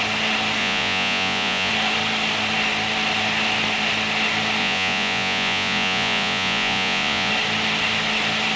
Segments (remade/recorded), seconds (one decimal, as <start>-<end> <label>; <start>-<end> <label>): 0.0-0.6 recorded; 0.6-1.7 remade; 1.7-4.6 recorded; 4.6-7.3 remade; 7.3-8.6 recorded